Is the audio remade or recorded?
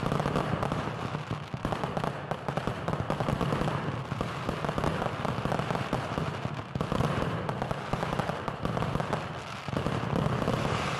recorded